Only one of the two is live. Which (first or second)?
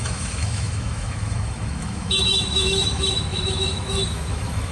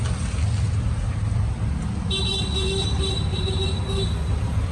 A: second